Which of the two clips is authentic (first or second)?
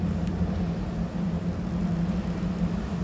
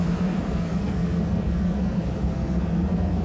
first